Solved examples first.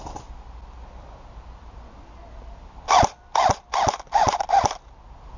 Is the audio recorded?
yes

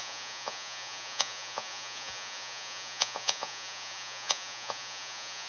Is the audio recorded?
no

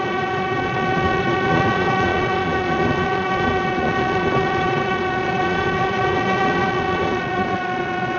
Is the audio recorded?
no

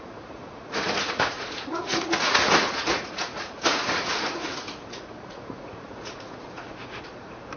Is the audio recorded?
no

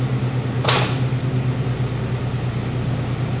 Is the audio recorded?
yes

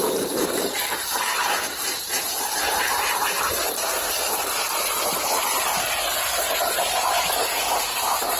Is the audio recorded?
no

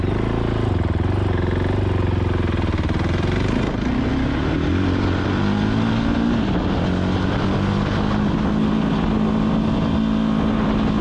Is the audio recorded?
yes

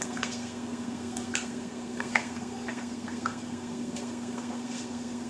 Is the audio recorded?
no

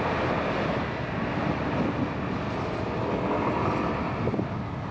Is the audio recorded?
yes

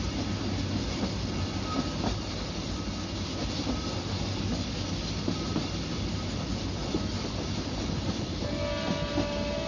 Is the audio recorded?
yes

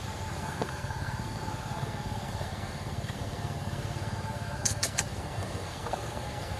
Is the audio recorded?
no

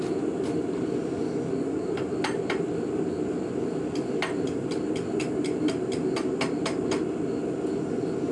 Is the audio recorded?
yes